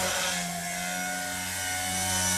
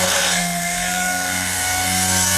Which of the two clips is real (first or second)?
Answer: first